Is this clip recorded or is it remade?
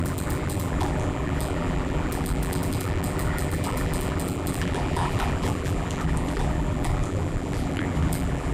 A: remade